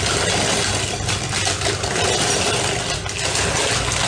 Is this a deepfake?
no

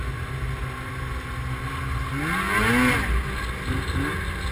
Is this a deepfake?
no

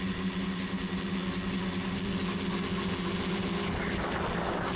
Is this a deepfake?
no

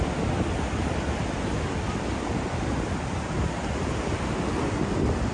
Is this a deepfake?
no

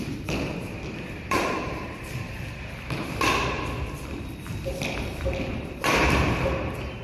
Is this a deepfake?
yes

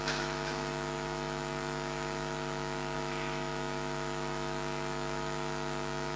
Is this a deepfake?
yes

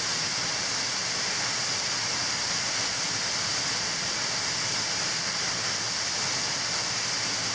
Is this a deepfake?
no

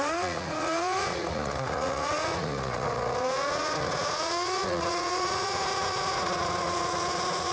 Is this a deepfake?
yes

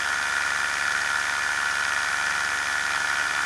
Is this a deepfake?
no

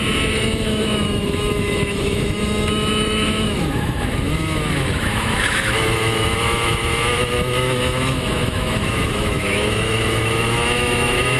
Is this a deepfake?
yes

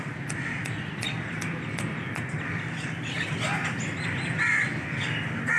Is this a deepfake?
no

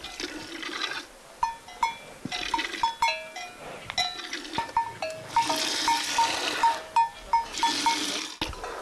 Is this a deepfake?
no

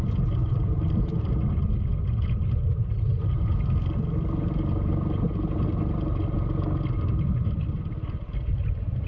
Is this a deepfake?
no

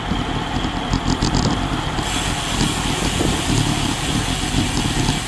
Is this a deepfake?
no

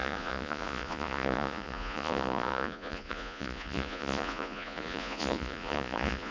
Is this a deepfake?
yes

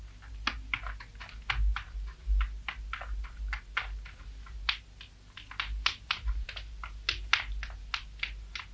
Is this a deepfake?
no